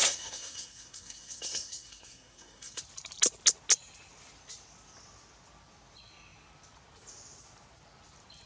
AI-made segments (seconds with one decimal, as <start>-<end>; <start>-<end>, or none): 0.0-2.8